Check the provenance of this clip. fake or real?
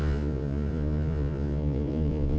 fake